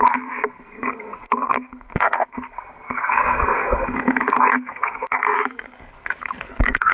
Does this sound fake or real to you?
fake